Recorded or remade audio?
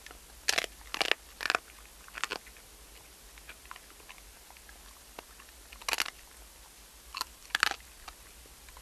recorded